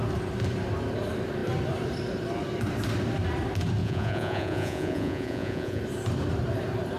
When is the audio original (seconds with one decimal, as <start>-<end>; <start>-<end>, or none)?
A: 0.0-3.8; 5.8-7.0